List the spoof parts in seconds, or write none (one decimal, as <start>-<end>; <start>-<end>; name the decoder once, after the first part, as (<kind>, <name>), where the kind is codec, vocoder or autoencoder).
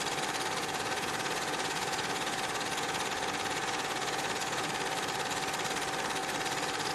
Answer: 0.6-4.7 (vocoder, Vocos)